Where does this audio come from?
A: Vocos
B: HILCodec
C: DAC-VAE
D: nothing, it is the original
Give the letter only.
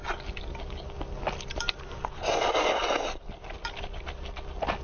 D